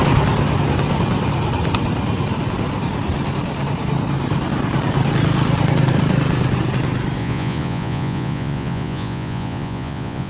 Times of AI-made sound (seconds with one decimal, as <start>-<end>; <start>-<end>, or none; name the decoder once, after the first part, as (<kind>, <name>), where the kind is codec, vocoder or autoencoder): 7.2-10.3 (vocoder, Vocos)